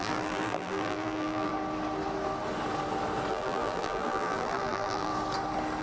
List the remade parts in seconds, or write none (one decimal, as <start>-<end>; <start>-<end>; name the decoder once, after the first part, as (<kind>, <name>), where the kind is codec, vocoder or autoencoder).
0.0-1.5 (vocoder, BigVGAN v2); 3.3-5.1